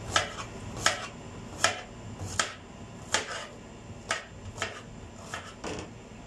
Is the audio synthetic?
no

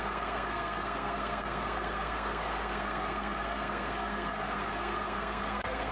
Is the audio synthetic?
yes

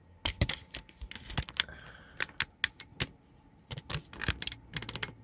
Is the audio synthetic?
no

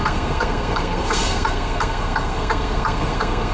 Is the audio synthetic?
yes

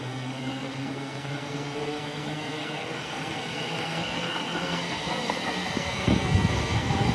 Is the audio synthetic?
yes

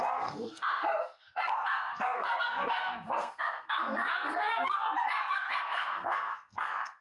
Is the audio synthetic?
yes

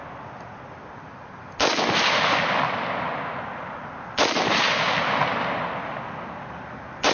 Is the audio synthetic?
no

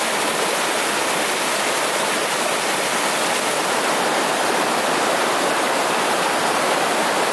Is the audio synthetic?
no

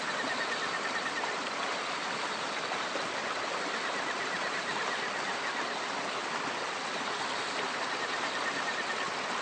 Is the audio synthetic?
no